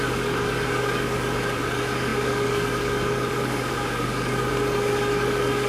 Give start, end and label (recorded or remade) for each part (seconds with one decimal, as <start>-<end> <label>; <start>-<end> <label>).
0.0-5.7 remade